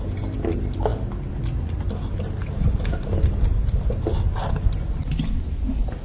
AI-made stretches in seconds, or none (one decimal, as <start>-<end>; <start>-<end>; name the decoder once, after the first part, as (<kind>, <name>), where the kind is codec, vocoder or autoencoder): none